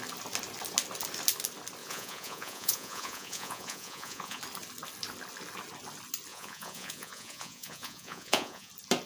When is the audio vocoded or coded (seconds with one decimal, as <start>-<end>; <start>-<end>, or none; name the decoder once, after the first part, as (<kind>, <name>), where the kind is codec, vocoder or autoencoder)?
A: 1.8-4.4 (vocoder, Vocos); 6.3-8.7